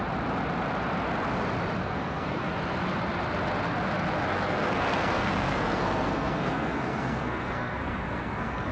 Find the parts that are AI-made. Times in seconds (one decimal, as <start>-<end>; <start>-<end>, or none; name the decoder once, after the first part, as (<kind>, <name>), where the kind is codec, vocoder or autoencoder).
1.8-2.5 (codec, SNAC); 4.3-8.7